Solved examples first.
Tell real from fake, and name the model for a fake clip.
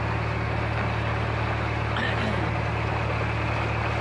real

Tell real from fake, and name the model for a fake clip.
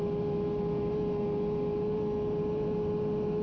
real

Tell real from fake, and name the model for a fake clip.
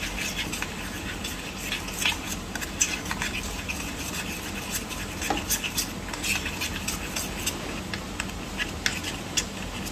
real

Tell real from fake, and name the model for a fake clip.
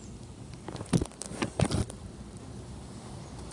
real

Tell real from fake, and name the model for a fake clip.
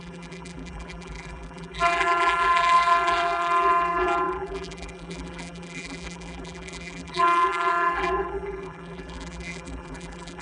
fake, vocoder, BigVGAN v2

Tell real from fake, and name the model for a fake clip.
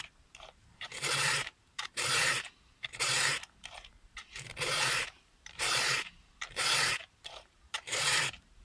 fake, vocoder, BigVGAN v2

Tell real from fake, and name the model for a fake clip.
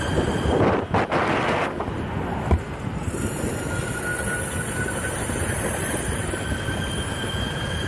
real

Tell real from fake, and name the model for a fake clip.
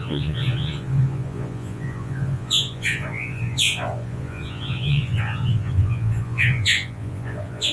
fake, vocoder, Vocos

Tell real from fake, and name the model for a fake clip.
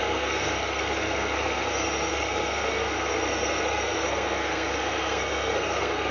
fake, codec, SNAC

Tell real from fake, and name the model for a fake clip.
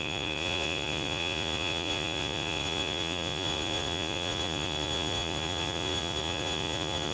fake, vocoder, Vocos